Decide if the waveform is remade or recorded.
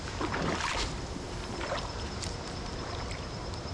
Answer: recorded